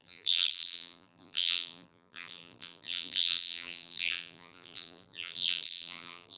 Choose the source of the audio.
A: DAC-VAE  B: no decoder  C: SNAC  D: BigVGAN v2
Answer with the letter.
D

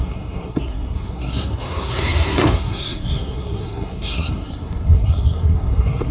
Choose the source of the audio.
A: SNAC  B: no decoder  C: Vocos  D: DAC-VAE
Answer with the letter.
A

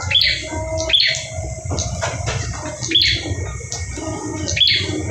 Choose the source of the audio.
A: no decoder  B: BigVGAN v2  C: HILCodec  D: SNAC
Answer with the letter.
A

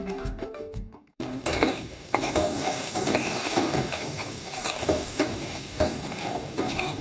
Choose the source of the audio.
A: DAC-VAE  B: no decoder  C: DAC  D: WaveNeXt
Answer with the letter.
C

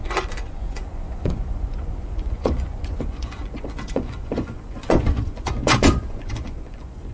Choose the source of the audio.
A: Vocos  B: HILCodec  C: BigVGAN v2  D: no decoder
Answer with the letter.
A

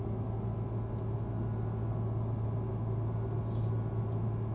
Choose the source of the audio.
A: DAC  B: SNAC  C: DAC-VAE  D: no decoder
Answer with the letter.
D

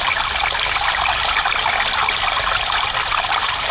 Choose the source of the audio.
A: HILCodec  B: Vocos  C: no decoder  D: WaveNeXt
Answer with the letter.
C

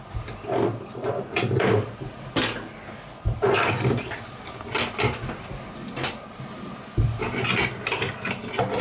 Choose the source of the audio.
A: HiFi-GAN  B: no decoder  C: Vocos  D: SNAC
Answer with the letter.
B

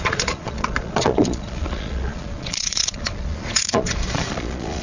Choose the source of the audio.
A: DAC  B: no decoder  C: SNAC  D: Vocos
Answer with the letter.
D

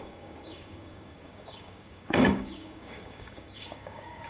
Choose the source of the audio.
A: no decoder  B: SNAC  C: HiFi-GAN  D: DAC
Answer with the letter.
D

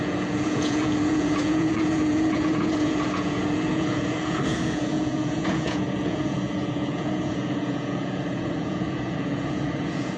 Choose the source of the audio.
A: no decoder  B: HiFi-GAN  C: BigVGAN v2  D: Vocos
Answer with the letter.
D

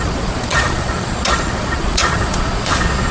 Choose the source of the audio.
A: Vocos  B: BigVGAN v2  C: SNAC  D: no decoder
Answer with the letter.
A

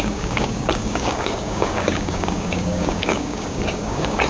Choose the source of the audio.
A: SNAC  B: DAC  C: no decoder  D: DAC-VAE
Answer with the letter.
B